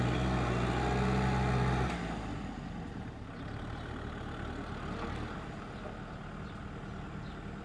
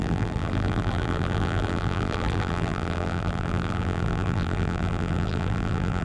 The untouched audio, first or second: first